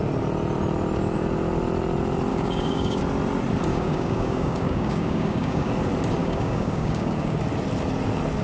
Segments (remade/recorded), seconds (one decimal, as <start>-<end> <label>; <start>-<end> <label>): 0.0-2.3 recorded; 2.3-3.0 remade; 3.0-3.7 recorded; 3.7-5.7 remade; 5.7-6.2 recorded; 6.2-7.4 remade; 7.4-8.4 recorded

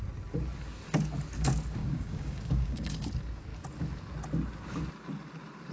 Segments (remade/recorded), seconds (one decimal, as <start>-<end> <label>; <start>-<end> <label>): 0.0-1.8 recorded; 1.8-3.1 remade; 3.1-5.7 recorded